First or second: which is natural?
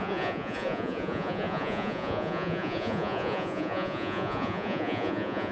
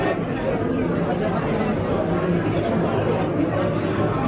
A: second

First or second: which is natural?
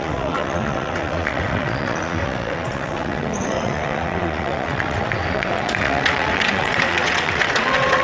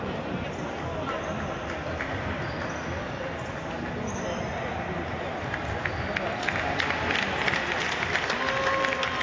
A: second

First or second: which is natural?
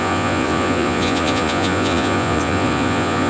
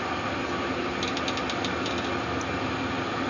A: second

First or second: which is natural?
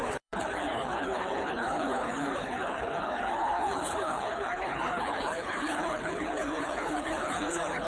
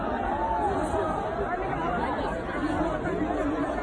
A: second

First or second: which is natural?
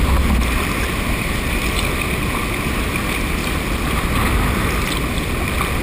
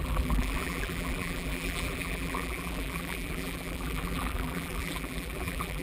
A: first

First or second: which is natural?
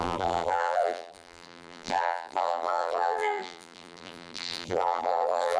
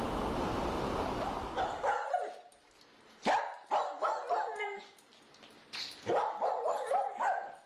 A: second